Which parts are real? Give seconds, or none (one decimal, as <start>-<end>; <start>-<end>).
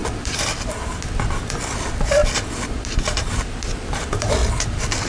1.1-2.2; 3.3-4.4